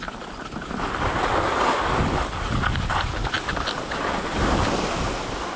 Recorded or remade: recorded